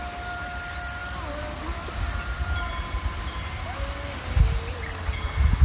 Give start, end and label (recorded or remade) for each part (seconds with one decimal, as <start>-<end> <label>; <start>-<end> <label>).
0.0-1.0 recorded; 1.0-4.4 remade; 4.4-5.6 recorded